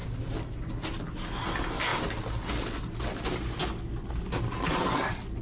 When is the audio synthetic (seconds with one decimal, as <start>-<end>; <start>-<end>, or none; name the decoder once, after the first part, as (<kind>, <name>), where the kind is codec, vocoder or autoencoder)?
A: none